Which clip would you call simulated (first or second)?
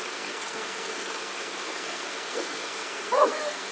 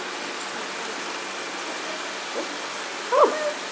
first